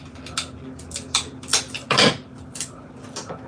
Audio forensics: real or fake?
real